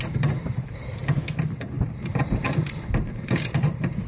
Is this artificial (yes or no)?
yes